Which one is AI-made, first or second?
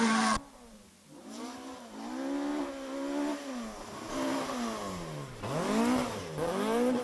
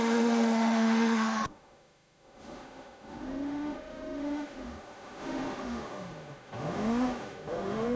second